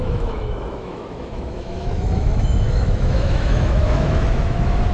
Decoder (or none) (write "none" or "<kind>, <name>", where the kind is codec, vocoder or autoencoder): autoencoder, DAC-VAE